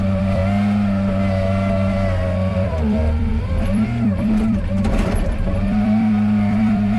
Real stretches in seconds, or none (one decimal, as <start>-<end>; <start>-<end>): 0.4-2.5